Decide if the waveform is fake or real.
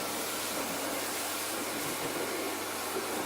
real